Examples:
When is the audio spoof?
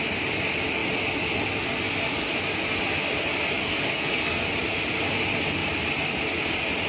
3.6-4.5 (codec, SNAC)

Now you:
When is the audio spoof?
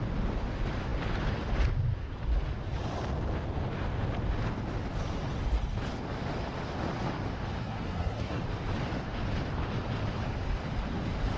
7.6-8.4 (codec, SNAC)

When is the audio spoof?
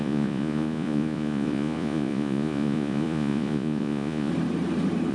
0.0-4.3 (vocoder, Vocos)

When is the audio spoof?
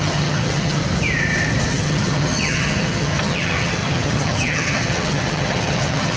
0.0-0.8 (vocoder, HiFi-GAN); 1.7-6.2